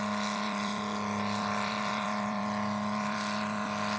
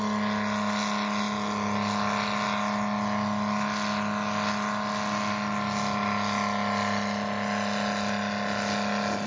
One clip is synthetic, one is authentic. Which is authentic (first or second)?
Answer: second